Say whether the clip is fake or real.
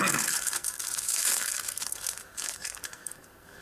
fake